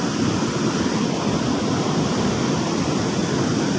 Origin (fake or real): real